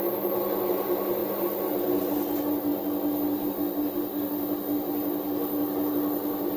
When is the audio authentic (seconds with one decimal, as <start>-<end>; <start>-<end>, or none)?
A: 0.0-6.6